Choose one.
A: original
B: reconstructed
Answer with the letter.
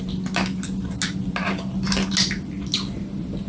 A